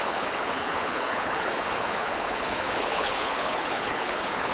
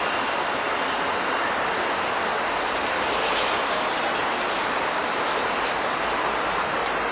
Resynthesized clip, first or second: first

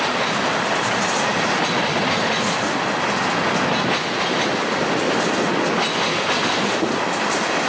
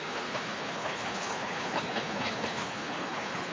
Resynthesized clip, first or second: second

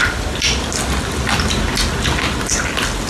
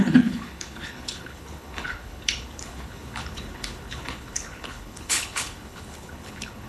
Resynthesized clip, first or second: second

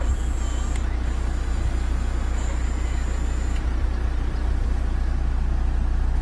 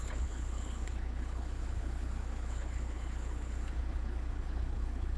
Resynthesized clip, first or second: second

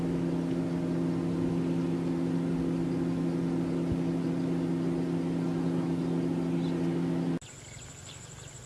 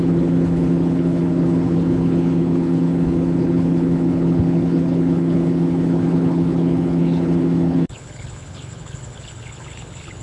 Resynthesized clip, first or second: second